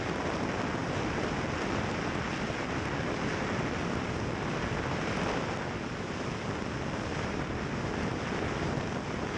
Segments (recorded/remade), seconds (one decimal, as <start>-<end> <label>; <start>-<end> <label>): 0.0-9.4 recorded